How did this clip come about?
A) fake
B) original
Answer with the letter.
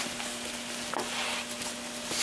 B